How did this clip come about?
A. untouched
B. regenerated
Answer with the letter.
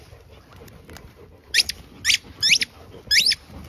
A